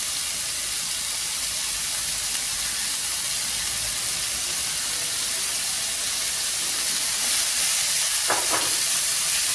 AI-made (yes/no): no